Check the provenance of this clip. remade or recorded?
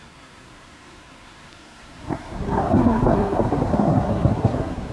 remade